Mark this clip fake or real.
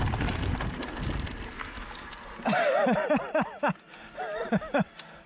real